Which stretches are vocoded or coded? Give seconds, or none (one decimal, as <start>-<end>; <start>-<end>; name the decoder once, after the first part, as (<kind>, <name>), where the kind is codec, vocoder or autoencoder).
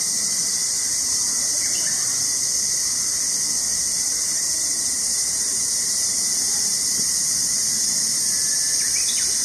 0.6-1.9 (vocoder, BigVGAN v2); 3.7-7.5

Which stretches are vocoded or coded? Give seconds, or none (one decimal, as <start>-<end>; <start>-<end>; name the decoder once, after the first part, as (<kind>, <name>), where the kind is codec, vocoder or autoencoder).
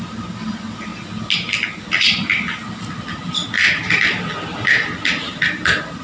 none